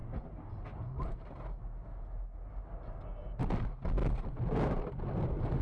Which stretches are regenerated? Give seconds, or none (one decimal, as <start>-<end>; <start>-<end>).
none